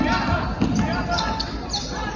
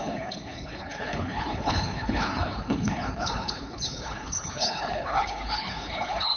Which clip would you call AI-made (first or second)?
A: second